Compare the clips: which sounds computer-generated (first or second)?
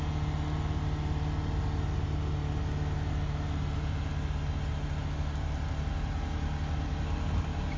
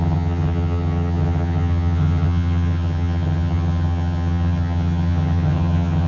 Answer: second